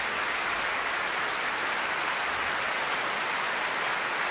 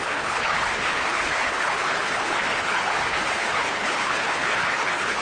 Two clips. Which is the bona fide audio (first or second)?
first